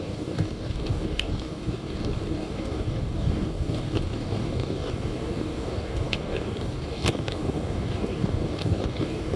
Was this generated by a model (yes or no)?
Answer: yes